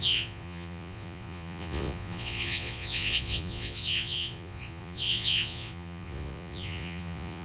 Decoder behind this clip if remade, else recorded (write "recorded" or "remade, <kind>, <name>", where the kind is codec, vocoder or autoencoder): remade, vocoder, Vocos